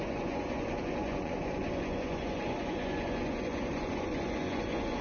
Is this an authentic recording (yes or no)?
no